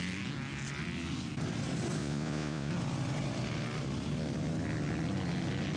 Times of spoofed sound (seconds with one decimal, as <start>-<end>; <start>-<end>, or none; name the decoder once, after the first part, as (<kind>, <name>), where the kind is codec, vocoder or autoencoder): 2.0-2.7 (vocoder, Vocos)